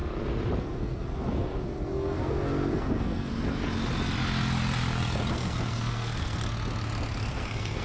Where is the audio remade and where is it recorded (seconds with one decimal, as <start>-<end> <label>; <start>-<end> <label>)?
0.0-0.6 recorded; 0.6-3.3 remade; 3.3-5.3 recorded; 5.3-6.4 remade; 6.4-7.3 recorded; 7.3-7.8 remade